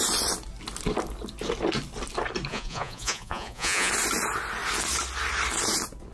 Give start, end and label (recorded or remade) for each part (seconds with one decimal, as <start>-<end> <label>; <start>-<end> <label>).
0.0-2.5 recorded; 2.5-3.9 remade; 3.9-6.1 recorded